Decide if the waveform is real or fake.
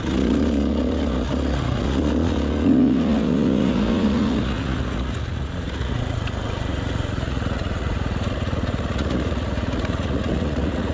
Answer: fake